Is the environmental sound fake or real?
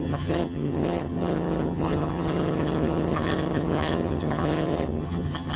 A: fake